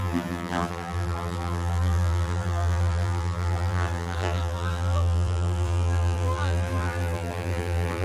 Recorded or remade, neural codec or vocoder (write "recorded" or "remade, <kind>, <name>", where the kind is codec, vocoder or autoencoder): remade, vocoder, BigVGAN v2